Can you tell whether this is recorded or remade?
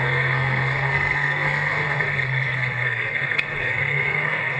remade